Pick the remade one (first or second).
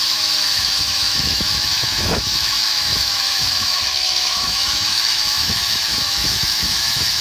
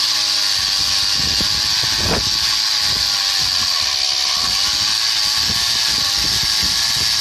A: first